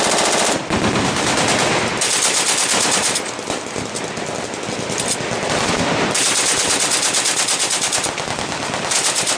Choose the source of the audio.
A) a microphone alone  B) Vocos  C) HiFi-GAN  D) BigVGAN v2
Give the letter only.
A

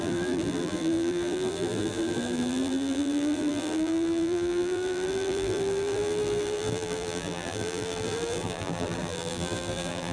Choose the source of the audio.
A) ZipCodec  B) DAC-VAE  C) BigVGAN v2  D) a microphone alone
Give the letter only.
C